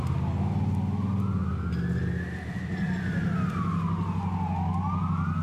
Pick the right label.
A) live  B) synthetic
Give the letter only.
A